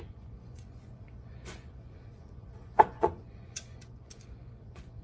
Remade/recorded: remade